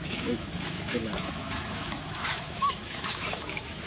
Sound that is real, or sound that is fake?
fake